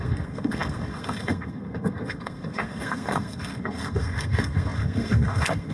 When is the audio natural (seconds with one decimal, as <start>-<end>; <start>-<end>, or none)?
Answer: none